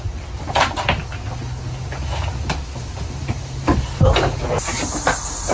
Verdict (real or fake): real